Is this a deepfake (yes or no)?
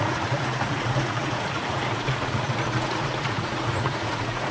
yes